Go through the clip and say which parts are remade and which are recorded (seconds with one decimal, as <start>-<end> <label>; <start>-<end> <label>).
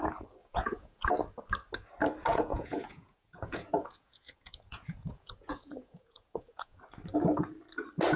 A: 0.0-0.4 recorded; 0.4-1.1 remade; 1.1-2.3 recorded; 2.3-6.8 remade; 6.8-8.2 recorded